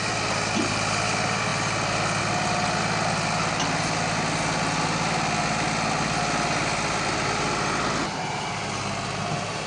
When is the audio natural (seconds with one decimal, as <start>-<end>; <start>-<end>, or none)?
0.0-9.7